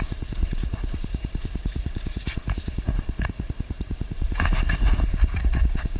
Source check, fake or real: fake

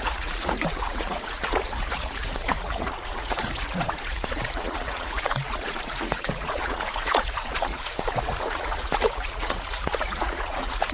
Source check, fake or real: fake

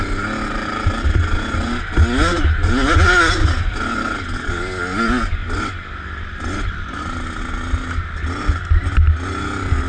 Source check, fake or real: real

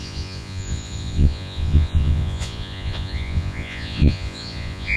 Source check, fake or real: fake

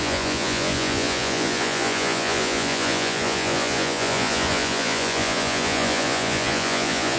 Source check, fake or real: fake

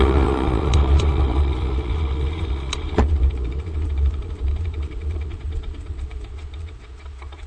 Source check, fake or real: fake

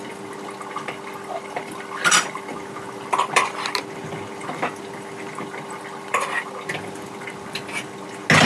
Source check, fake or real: real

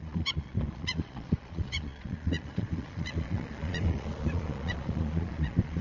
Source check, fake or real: fake